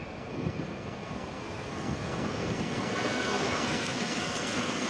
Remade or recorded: remade